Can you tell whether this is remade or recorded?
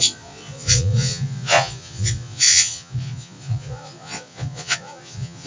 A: remade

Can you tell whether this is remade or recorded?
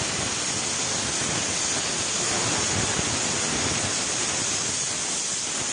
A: recorded